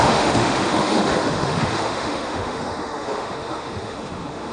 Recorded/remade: remade